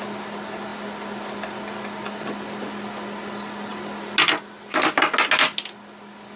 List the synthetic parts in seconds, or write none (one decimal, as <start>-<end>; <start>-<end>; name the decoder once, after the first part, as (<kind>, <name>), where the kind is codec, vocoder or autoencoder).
none